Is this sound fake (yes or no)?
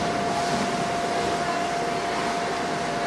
no